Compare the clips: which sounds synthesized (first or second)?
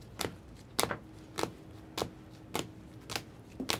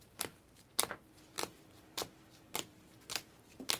second